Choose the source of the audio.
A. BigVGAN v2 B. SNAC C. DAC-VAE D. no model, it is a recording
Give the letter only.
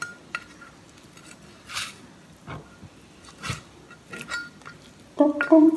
D